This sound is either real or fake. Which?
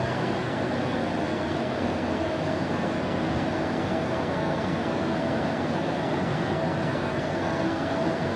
fake